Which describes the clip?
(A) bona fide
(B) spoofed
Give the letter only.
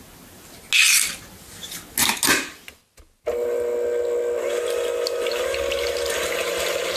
A